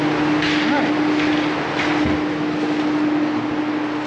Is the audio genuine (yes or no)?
yes